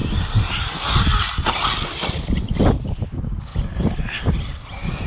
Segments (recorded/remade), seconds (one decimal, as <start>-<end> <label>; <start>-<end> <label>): 0.0-2.6 recorded; 2.6-3.5 remade; 3.5-4.5 recorded; 4.5-5.1 remade